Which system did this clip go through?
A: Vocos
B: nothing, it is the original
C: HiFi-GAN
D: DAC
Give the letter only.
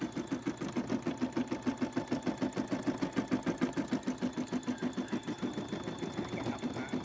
B